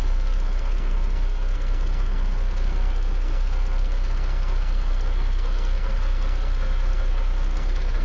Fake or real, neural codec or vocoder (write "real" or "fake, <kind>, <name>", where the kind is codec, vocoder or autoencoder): fake, codec, SNAC